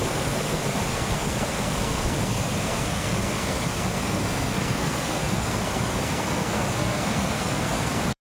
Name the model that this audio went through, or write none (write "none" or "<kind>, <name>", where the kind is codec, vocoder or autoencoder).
codec, SNAC